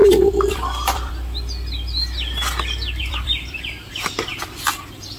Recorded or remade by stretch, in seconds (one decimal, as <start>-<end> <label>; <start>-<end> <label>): 0.0-1.1 remade; 1.1-3.0 recorded; 3.0-3.8 remade; 3.8-4.3 recorded; 4.3-5.2 remade